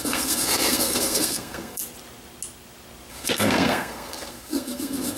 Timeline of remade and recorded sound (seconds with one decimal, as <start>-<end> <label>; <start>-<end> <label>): 0.0-1.8 remade; 1.8-3.1 recorded; 3.1-5.2 remade